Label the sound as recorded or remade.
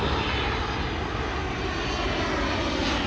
recorded